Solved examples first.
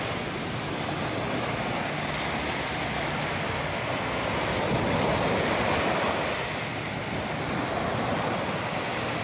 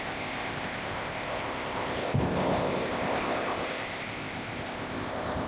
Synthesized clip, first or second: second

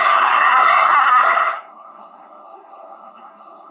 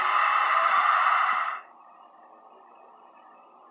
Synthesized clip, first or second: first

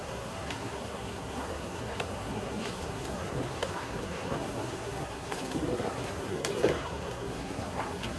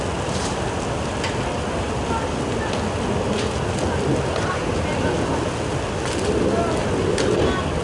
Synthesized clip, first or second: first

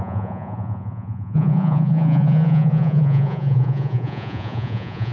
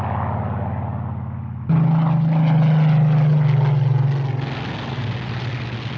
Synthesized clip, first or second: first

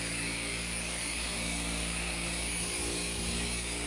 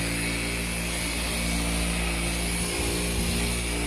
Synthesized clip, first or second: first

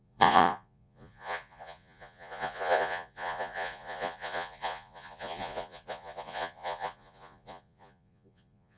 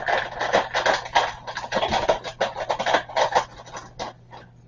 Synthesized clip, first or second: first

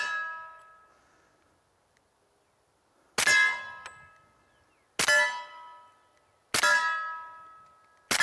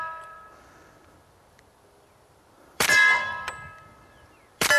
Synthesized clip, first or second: second